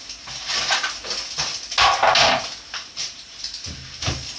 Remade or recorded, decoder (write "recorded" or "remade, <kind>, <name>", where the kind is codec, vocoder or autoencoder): recorded